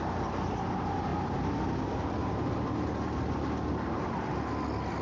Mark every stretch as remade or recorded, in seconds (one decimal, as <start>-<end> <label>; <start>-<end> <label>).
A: 0.0-5.0 recorded